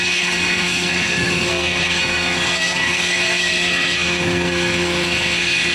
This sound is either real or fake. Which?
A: fake